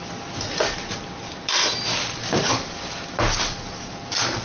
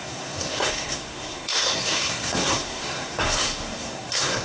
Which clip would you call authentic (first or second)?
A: first